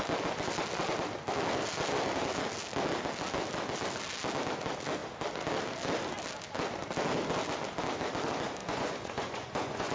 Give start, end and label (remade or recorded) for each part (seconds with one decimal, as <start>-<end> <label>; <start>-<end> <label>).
0.0-8.6 recorded; 8.6-9.9 remade